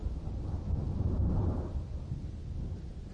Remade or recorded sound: recorded